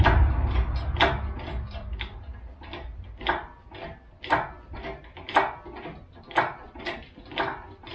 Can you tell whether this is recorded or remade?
recorded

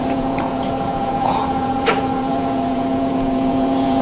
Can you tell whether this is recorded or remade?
remade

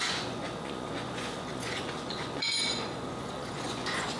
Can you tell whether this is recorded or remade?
remade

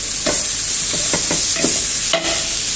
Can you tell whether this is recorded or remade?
recorded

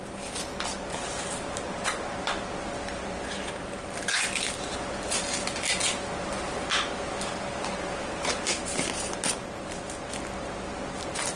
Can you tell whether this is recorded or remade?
recorded